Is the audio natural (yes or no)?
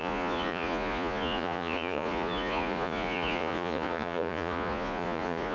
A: no